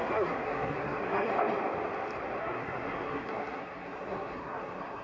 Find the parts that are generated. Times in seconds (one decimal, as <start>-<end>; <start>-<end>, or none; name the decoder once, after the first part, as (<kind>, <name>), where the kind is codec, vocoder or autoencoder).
0.0-1.3 (codec, SNAC); 2.4-5.0